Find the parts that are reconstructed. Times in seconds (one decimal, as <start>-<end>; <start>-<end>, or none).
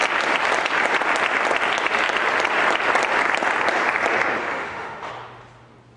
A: 4.4-5.1